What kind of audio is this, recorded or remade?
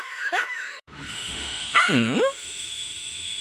remade